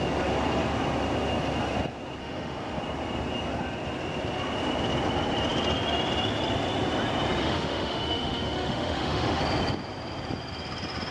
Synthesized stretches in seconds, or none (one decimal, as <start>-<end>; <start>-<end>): 2.2-2.8; 7.4-9.4